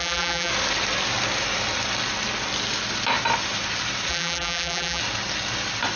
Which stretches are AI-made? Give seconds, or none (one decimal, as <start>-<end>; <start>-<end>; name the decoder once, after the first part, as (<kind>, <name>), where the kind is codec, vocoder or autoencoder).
0.0-0.5 (vocoder, BigVGAN v2); 4.1-5.0